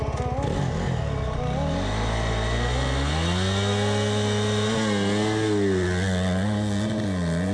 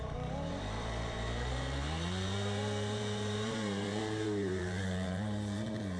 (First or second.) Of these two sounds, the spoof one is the second